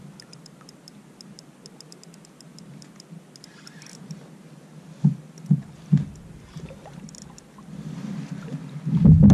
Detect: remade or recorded recorded